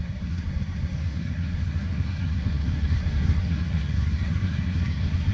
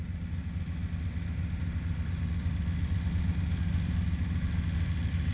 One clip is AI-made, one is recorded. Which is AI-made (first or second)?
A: first